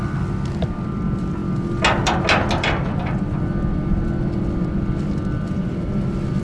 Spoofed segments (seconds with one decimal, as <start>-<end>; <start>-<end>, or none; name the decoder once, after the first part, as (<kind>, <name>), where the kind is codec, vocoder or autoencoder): none